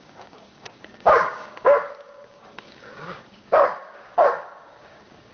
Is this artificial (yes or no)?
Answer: yes